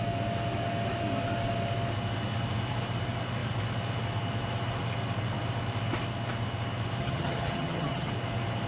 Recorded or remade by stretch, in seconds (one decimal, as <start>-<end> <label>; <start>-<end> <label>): 0.0-7.0 recorded; 7.0-8.1 remade; 8.1-8.7 recorded